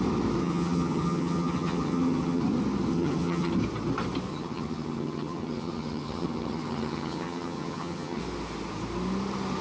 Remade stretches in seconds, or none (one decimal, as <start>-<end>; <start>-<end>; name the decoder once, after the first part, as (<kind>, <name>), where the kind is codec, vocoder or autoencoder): 0.4-2.4 (vocoder, HiFi-GAN); 2.9-3.5; 4.3-8.2